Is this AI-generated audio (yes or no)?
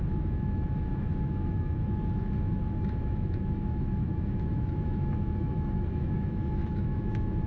yes